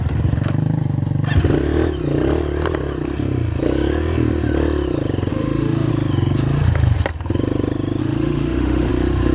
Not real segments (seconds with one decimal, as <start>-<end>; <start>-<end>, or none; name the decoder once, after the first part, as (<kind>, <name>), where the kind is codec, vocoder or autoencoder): 5.3-5.9 (autoencoder, DAC-VAE); 8.0-8.9